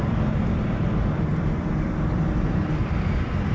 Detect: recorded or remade recorded